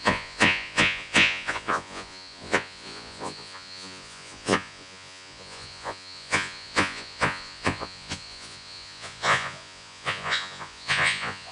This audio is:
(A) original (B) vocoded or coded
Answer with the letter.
B